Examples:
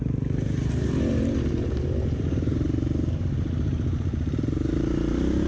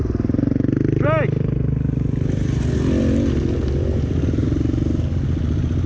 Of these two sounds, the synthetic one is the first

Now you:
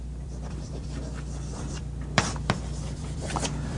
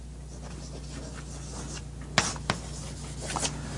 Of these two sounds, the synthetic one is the first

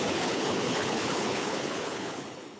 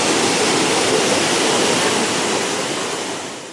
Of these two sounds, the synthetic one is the first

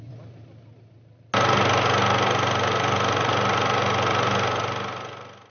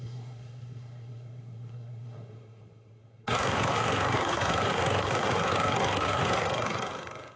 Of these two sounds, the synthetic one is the second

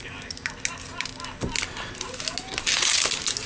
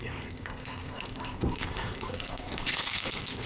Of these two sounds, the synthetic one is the second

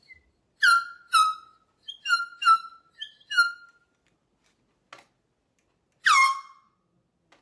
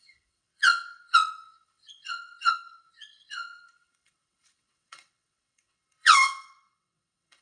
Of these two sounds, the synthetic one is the second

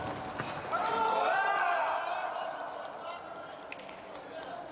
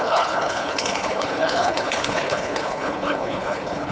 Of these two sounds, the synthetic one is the second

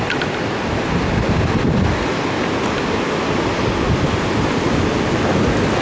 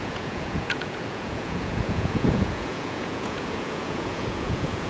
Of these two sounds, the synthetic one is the second